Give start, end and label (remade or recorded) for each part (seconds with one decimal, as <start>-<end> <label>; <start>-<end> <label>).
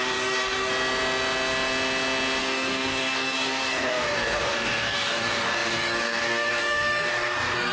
0.0-0.7 remade; 0.7-2.4 recorded; 2.4-7.7 remade